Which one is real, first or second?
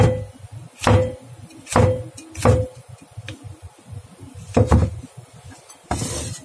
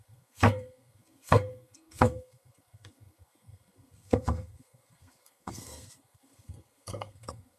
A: first